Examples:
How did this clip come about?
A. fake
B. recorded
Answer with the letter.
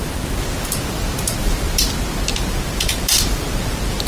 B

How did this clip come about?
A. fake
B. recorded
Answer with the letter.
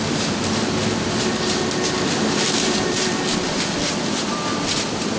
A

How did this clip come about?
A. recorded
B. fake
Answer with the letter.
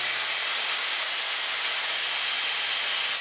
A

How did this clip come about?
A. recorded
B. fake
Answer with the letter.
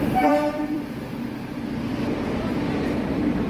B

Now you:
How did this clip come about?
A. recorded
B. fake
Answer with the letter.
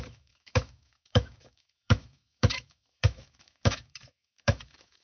B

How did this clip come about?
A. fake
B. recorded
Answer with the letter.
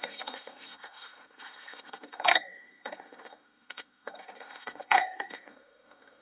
A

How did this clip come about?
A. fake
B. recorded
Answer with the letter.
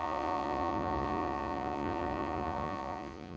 A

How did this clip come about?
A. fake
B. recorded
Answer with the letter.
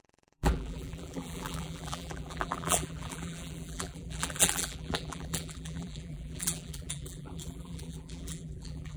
A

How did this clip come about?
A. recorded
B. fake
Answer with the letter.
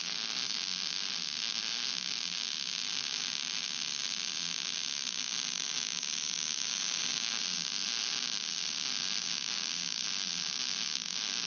A